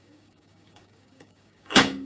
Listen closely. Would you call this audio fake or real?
fake